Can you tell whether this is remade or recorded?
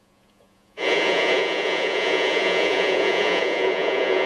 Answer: remade